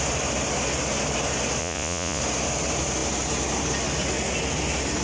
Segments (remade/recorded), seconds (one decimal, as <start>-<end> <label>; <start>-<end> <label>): 0.0-1.6 recorded; 1.6-2.2 remade; 2.2-5.0 recorded